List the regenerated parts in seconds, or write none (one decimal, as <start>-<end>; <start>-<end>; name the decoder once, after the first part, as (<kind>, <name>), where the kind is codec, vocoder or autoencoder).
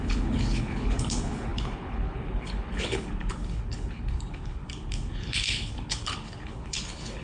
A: 0.0-7.2 (codec, HILCodec)